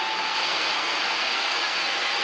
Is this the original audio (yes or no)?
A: no